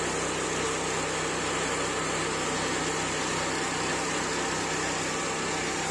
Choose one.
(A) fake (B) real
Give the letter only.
B